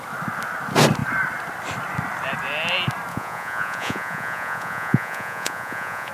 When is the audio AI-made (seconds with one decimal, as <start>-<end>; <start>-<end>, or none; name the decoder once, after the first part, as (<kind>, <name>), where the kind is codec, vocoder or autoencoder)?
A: 3.1-6.1 (vocoder, Vocos)